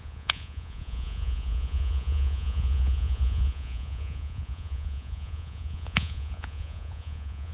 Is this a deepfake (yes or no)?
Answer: yes